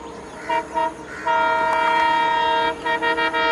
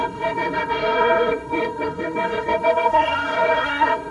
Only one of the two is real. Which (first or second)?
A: first